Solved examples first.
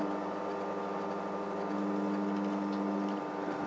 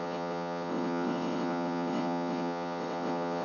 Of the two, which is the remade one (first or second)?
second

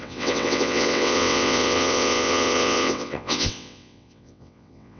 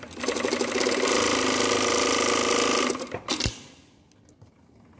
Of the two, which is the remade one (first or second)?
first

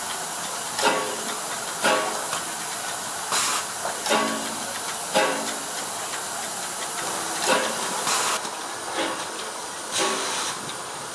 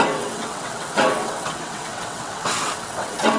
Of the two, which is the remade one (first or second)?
second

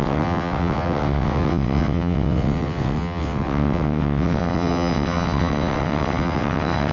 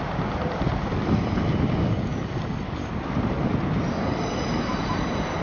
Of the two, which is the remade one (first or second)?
first